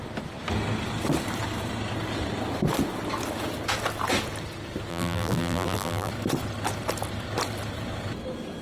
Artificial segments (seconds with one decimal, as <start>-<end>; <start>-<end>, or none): 4.9-6.1